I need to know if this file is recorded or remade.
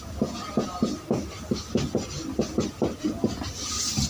recorded